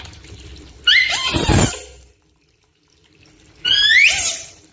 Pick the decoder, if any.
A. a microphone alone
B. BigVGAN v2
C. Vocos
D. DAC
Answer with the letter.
B